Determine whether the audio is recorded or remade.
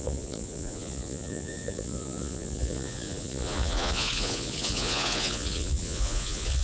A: remade